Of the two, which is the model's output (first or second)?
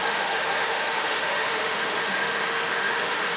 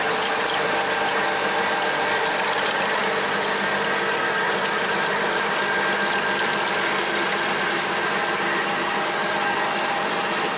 first